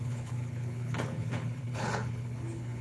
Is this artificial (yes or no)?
yes